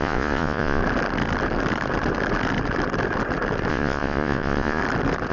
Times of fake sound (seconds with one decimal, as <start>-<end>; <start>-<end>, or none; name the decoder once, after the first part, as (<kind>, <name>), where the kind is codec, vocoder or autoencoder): 0.0-0.8 (vocoder, Vocos); 3.7-4.8